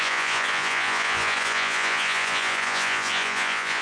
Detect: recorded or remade remade